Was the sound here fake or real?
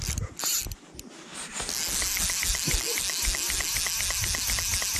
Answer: real